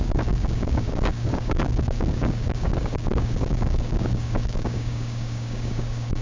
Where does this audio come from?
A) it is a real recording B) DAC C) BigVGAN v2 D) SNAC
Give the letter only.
B